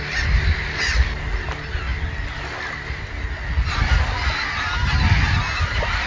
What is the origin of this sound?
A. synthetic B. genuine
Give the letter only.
B